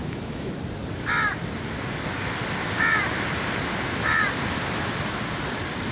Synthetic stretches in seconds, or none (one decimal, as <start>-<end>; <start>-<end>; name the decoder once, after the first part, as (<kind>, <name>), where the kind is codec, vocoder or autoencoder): 0.0-0.6 (autoencoder, DAC-VAE)